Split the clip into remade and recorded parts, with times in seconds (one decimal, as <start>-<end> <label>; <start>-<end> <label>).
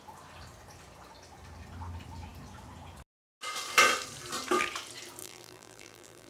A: 0.0-5.2 recorded; 5.2-6.3 remade